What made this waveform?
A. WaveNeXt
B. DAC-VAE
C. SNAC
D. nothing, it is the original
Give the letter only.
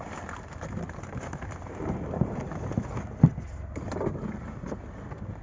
D